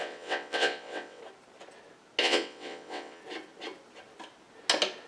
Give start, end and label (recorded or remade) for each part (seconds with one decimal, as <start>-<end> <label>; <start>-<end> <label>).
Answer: 0.0-1.2 remade; 1.2-2.2 recorded; 2.2-3.2 remade; 3.2-5.1 recorded

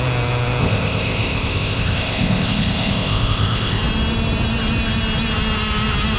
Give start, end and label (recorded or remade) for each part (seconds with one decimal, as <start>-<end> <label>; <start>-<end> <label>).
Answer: 0.0-0.6 recorded; 0.6-3.8 remade; 3.8-6.2 recorded

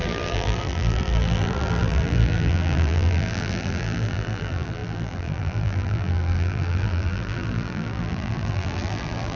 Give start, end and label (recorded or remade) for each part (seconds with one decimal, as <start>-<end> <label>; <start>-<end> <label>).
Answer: 0.0-9.4 remade

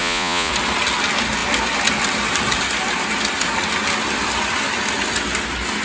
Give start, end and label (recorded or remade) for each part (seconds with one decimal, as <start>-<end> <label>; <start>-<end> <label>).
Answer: 0.0-0.5 remade; 0.5-5.8 recorded

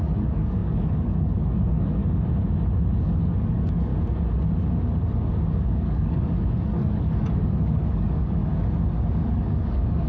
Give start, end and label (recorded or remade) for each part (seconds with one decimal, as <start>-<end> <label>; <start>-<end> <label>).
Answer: 0.0-2.0 remade; 2.0-3.0 recorded; 3.0-3.9 remade; 3.9-5.5 recorded; 5.5-8.4 remade; 8.4-9.1 recorded; 9.1-10.1 remade

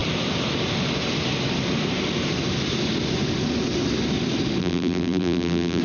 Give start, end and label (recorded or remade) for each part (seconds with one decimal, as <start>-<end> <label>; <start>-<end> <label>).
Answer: 0.0-4.6 recorded; 4.6-5.8 remade

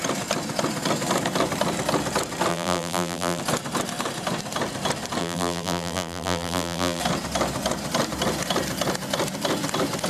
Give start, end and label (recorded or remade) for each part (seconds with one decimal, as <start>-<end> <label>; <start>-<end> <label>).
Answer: 0.0-2.5 recorded; 2.5-3.4 remade; 3.4-5.2 recorded; 5.2-7.0 remade; 7.0-10.1 recorded